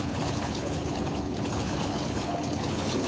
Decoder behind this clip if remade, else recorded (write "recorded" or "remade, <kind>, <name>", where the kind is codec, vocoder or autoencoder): remade, codec, HILCodec